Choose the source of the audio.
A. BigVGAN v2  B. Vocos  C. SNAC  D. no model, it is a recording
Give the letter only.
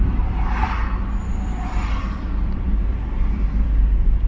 A